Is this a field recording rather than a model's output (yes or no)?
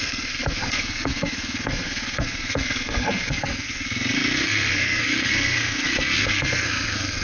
no